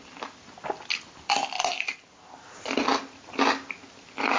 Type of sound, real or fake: real